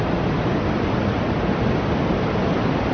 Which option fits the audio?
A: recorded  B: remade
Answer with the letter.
A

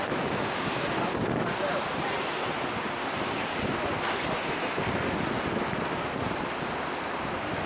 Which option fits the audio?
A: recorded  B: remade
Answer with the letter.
A